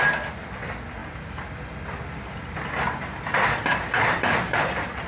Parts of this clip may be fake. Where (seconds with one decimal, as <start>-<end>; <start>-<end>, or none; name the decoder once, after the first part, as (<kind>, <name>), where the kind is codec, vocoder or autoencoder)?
none